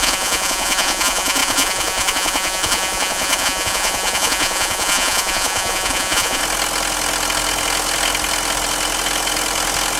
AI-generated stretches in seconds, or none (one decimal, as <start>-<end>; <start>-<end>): 0.0-6.4

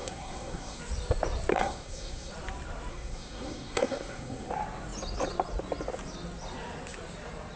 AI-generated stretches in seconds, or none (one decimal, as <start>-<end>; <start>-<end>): 0.0-0.8; 1.5-2.3; 2.9-4.5

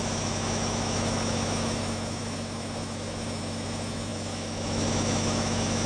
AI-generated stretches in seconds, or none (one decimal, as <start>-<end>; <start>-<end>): 0.0-5.9

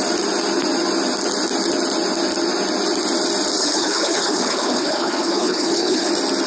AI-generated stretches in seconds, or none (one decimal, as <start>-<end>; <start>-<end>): 3.6-6.1

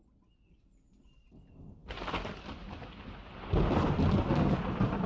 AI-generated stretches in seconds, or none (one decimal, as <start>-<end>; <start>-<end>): none

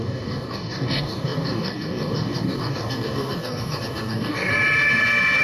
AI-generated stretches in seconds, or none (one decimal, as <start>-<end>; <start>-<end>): 0.0-4.5

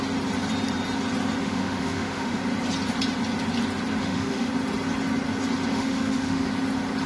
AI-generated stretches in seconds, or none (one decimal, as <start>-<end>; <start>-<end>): 1.4-2.4; 4.0-4.5; 5.7-6.5

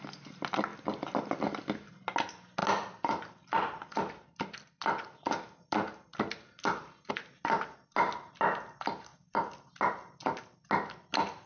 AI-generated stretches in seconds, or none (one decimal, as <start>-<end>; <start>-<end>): none